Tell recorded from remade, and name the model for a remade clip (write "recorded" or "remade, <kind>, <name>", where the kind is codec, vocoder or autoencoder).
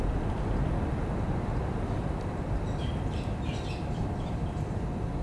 recorded